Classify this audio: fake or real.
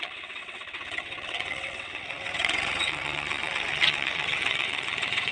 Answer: fake